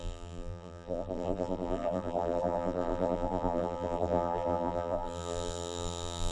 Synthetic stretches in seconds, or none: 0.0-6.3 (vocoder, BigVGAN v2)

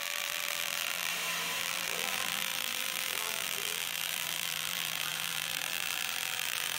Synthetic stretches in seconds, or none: 0.0-1.1 (vocoder, BigVGAN v2); 1.6-6.8